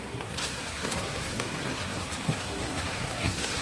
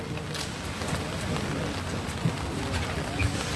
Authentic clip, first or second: second